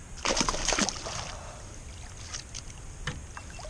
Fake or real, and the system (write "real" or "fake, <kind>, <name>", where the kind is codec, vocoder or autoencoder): real